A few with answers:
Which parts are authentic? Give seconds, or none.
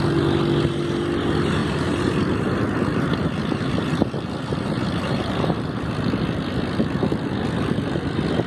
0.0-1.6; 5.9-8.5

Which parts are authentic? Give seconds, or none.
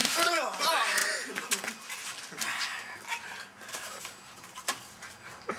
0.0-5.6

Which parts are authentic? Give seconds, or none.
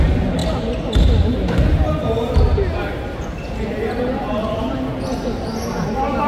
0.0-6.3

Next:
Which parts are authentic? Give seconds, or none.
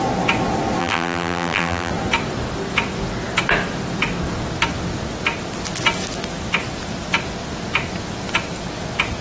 0.0-0.8; 1.9-9.2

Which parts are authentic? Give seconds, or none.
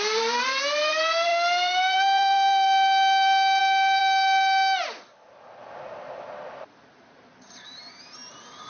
4.0-6.5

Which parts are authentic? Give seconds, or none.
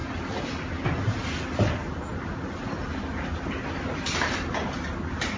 0.0-2.1